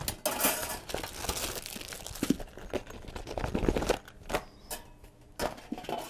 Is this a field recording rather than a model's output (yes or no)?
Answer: yes